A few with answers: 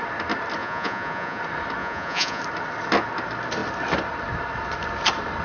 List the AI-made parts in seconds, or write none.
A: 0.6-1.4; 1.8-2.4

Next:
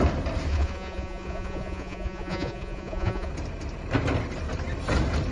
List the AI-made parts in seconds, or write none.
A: 0.5-3.3

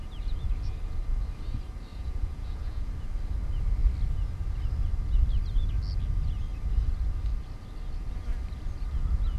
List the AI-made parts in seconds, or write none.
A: 1.9-2.9